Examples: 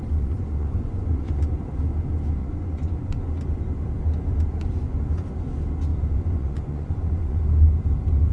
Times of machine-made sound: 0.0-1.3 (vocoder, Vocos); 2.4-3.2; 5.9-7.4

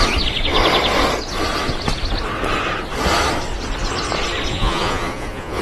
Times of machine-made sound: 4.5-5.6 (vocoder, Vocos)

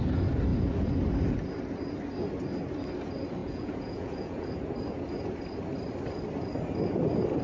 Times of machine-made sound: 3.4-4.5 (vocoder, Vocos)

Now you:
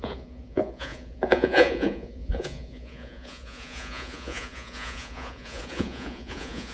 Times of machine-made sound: 0.0-6.7 (vocoder, Vocos)